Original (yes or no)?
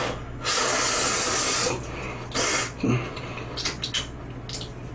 yes